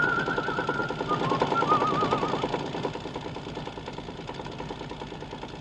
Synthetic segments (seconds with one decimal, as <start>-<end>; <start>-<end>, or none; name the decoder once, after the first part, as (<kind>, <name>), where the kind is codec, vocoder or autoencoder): none